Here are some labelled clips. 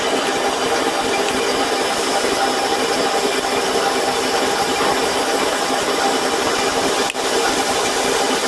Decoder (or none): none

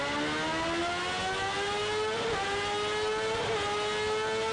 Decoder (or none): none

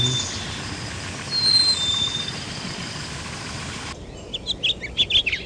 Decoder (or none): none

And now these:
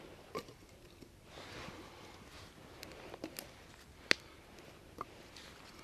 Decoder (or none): none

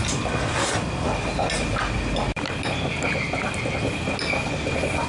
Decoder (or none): none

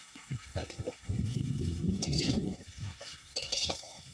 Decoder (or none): codec, SNAC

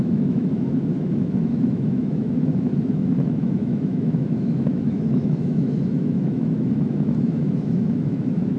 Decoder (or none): autoencoder, DAC-VAE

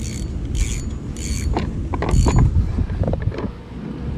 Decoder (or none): none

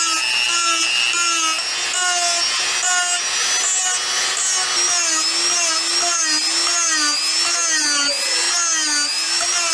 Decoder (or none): none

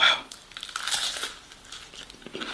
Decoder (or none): none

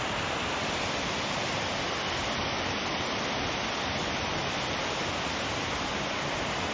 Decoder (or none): none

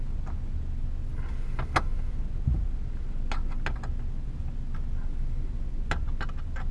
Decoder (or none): none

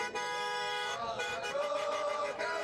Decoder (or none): autoencoder, DAC-VAE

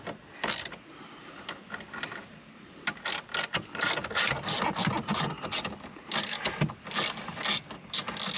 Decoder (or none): none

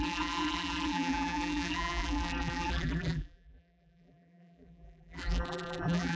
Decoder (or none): vocoder, BigVGAN v2